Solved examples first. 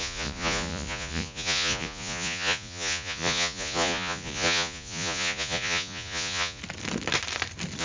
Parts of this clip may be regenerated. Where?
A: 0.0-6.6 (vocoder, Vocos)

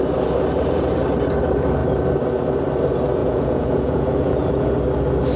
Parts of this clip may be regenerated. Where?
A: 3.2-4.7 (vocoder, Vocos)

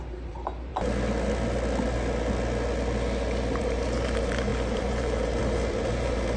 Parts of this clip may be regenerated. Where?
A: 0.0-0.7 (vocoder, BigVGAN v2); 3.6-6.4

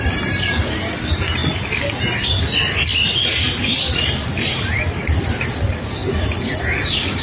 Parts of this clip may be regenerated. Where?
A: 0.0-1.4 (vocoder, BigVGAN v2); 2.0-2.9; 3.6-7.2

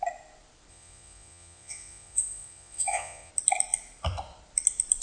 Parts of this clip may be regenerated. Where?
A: 0.7-3.3 (vocoder, Vocos)

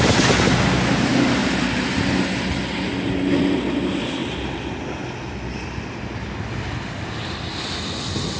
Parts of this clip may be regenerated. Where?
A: 1.4-2.0 (vocoder, BigVGAN v2)